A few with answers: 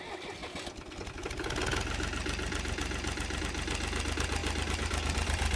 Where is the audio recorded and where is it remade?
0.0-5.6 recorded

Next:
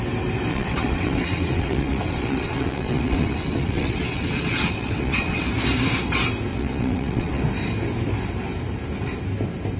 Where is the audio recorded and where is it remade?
0.0-0.5 recorded; 0.5-5.5 remade; 5.5-6.5 recorded; 6.5-7.4 remade; 7.4-9.8 recorded

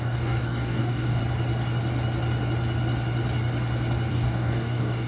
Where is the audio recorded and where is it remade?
0.0-1.2 remade; 1.2-4.1 recorded; 4.1-5.1 remade

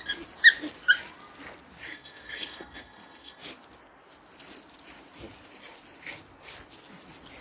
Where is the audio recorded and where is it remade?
0.0-1.9 recorded; 1.9-3.4 remade; 3.4-7.4 recorded